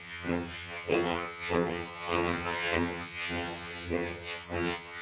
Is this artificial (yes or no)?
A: yes